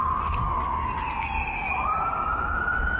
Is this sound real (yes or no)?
yes